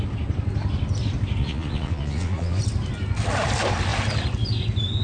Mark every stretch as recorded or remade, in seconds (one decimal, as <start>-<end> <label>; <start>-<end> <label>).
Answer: 0.0-1.4 recorded; 1.4-2.6 remade; 2.6-5.0 recorded